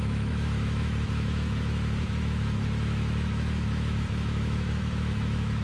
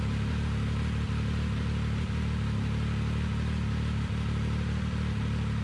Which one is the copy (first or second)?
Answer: first